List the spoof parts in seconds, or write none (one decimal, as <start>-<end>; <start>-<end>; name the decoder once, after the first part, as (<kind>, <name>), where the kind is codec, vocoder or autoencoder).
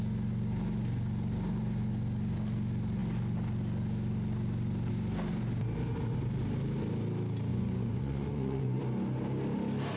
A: 7.5-8.8 (vocoder, Vocos)